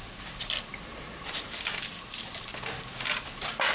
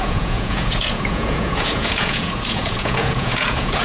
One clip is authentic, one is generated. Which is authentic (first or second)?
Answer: first